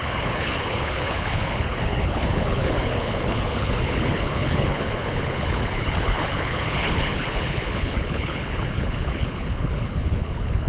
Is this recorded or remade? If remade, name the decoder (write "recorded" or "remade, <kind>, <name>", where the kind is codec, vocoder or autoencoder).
remade, codec, HILCodec